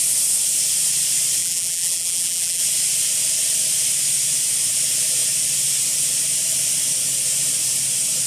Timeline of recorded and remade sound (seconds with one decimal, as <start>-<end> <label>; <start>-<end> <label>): 0.0-1.4 recorded; 1.4-2.6 remade; 2.6-8.3 recorded